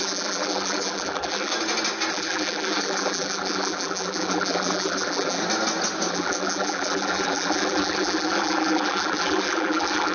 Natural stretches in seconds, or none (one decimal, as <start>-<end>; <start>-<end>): 1.5-2.1; 5.4-6.1